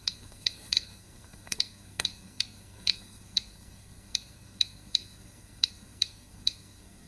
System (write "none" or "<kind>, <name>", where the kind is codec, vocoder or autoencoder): codec, SNAC